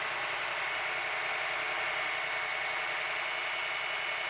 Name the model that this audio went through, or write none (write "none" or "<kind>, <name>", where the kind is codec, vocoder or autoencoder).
none